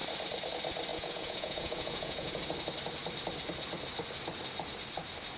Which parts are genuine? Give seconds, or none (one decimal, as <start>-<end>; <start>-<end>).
0.0-0.9; 2.4-5.4